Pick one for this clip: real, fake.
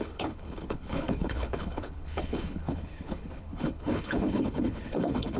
fake